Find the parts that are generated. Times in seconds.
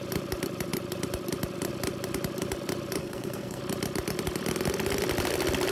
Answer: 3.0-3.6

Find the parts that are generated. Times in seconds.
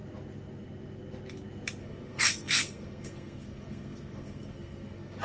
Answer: 1.8-5.2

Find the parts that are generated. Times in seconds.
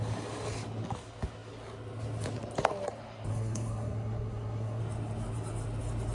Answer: 3.3-4.8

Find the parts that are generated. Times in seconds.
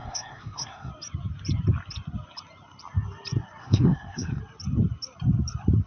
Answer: 0.0-0.9; 3.6-4.4